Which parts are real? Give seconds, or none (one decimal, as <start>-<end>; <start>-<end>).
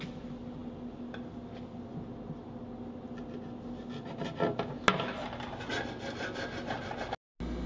0.0-7.7